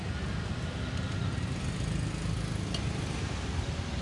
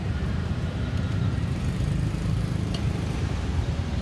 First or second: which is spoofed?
second